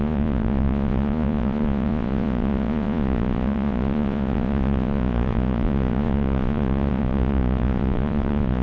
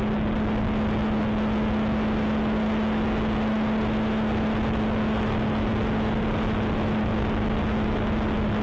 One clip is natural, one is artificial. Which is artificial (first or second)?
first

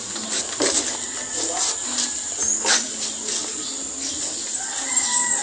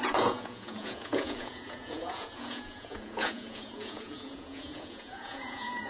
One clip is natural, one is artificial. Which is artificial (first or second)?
second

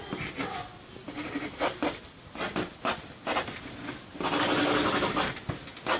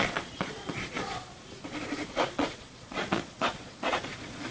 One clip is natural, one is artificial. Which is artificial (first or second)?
second